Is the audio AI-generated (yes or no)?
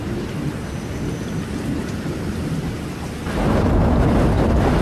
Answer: no